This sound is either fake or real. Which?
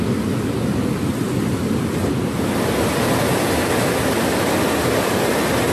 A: real